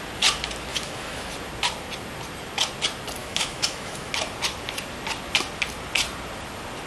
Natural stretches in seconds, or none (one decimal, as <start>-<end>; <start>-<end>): 0.0-0.7; 1.3-3.2; 4.1-6.9